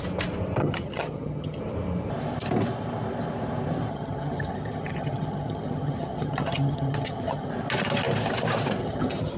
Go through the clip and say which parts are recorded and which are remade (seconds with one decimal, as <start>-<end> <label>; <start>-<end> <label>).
0.0-0.6 recorded; 0.6-1.6 remade; 1.6-3.9 recorded; 3.9-7.5 remade; 7.5-8.8 recorded; 8.8-9.4 remade